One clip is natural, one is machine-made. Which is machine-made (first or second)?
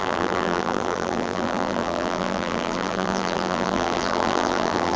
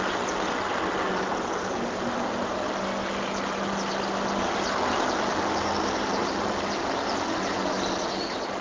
first